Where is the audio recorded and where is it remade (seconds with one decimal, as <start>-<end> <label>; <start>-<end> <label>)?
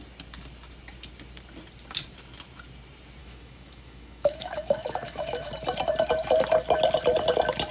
0.0-3.2 recorded; 3.2-5.5 remade; 5.5-7.7 recorded